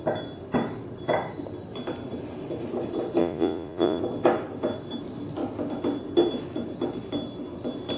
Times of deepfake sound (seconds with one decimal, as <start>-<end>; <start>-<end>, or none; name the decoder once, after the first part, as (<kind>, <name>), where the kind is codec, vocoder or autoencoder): 3.2-4.0 (vocoder, Vocos)